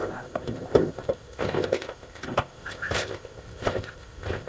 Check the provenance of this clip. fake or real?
fake